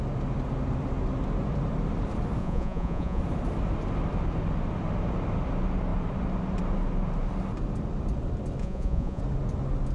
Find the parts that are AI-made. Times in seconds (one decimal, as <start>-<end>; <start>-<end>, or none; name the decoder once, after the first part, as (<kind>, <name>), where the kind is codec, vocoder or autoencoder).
2.4-3.2 (vocoder, Vocos); 8.6-9.2